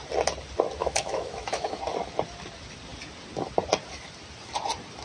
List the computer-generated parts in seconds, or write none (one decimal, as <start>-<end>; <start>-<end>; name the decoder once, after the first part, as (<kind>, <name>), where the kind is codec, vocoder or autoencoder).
0.8-1.8 (autoencoder, DAC-VAE)